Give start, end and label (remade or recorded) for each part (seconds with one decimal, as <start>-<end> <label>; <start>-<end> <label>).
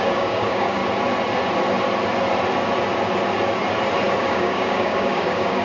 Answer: 0.0-0.8 remade; 0.8-4.2 recorded; 4.2-5.6 remade